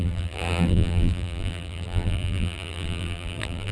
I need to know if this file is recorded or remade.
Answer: remade